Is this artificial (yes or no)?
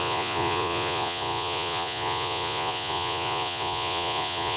yes